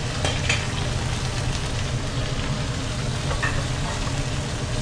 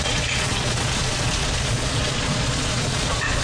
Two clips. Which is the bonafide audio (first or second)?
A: first